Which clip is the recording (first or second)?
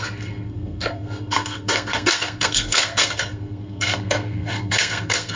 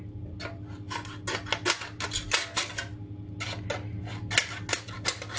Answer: second